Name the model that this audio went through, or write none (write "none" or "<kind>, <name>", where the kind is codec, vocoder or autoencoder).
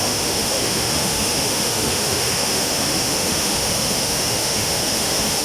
autoencoder, DAC-VAE